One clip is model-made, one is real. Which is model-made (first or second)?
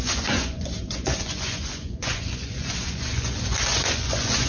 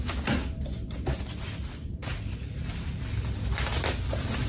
first